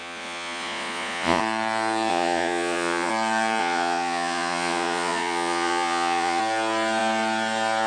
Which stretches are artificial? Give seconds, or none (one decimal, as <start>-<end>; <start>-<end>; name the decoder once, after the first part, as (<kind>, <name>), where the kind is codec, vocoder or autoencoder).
0.0-1.4 (vocoder, Vocos); 2.1-3.1; 3.6-6.4